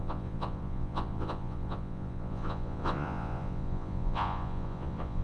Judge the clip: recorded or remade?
remade